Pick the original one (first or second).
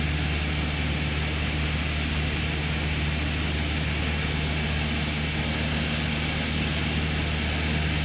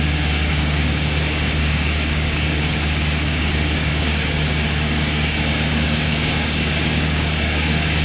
first